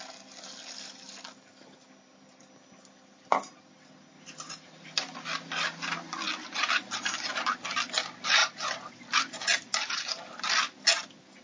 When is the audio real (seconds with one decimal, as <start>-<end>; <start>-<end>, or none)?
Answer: 0.0-11.4